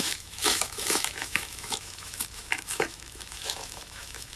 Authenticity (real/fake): fake